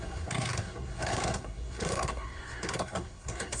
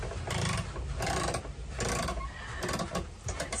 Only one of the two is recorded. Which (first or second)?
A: second